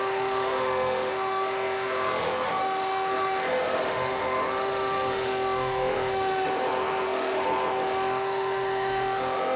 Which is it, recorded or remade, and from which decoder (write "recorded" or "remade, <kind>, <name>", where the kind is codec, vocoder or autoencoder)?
remade, autoencoder, DAC-VAE